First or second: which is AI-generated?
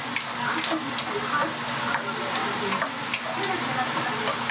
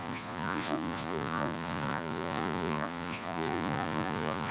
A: second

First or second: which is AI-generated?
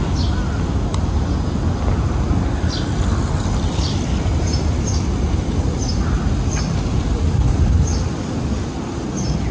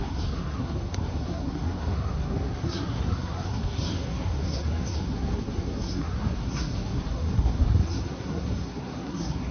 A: second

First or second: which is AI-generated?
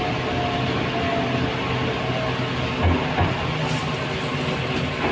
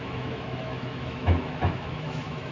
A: second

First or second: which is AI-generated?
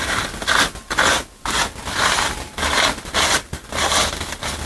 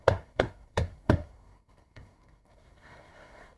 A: second